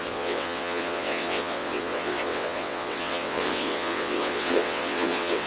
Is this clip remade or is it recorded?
remade